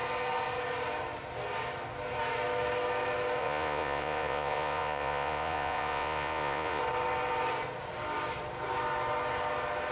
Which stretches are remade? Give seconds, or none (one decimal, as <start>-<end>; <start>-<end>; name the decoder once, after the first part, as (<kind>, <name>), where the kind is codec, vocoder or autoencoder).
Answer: 3.4-6.8 (vocoder, Vocos)